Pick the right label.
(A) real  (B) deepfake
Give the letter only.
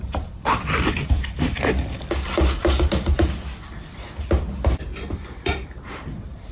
B